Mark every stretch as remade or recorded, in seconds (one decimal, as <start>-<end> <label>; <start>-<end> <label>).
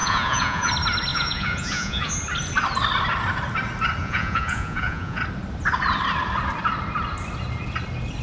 0.0-0.7 remade; 0.7-1.1 recorded; 1.1-2.1 remade; 2.1-4.0 recorded; 4.0-5.2 remade; 5.2-8.2 recorded